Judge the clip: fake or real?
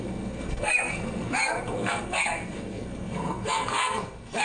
fake